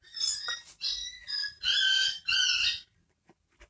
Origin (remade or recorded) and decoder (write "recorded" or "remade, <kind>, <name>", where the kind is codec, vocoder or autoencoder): recorded